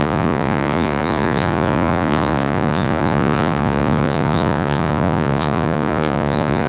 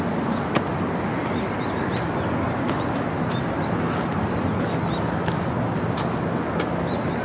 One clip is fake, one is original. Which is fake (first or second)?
first